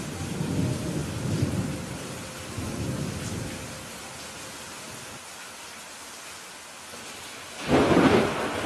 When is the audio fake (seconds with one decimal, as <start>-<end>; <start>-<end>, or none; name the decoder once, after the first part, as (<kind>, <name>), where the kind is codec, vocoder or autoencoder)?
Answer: none